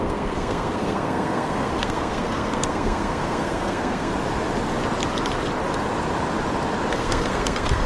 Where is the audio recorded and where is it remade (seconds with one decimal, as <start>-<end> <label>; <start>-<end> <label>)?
0.0-4.1 remade; 4.1-6.9 recorded; 6.9-7.9 remade